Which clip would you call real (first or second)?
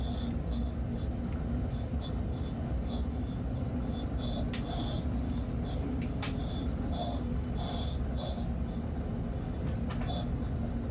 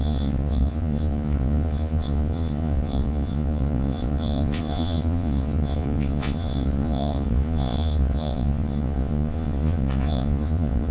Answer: first